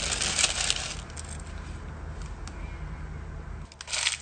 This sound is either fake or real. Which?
real